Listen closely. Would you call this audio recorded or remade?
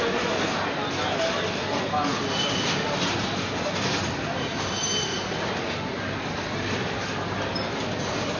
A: recorded